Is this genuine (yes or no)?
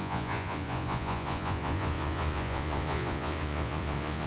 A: no